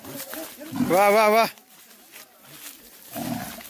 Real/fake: real